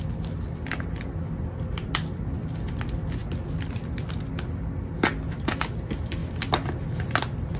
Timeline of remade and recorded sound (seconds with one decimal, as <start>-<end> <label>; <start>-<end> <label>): 0.0-7.6 recorded